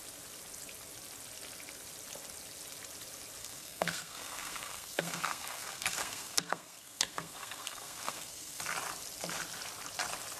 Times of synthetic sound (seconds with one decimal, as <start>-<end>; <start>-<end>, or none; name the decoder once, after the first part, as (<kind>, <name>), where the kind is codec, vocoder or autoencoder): 3.4-8.6 (codec, SNAC)